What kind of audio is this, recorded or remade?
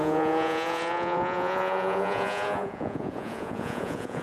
remade